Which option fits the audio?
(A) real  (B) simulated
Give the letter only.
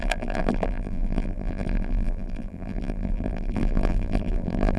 B